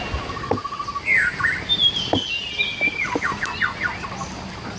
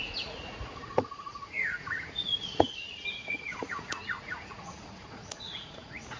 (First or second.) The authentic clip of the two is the first